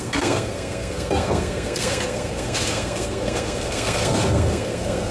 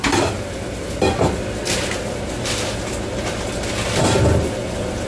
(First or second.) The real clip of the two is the second